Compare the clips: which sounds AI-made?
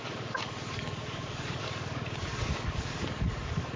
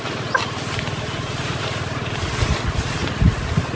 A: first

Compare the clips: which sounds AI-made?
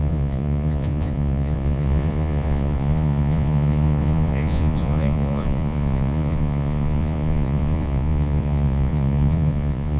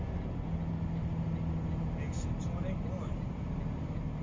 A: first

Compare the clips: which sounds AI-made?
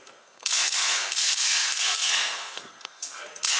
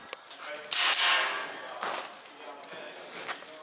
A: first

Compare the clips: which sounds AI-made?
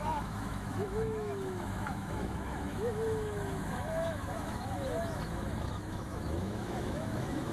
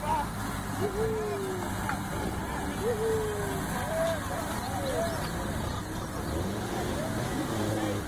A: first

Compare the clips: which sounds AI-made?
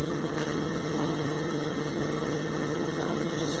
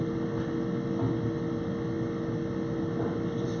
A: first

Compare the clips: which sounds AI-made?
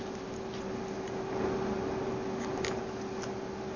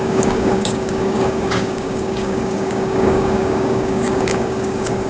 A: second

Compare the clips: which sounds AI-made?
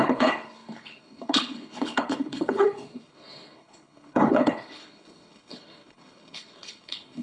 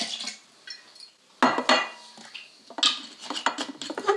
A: first